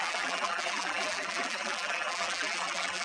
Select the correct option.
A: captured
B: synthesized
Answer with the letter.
B